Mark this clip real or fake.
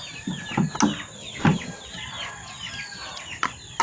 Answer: real